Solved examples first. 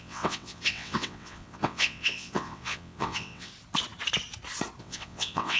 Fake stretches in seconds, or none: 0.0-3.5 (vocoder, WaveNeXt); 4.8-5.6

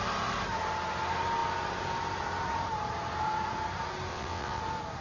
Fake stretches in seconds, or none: 4.1-4.6 (vocoder, WaveNeXt)